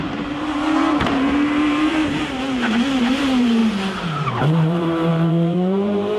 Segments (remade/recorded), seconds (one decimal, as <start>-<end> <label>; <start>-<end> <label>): 0.0-6.2 remade